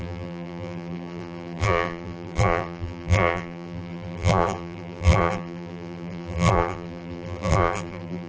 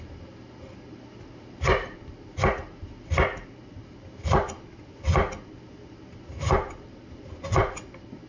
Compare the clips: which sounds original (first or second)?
second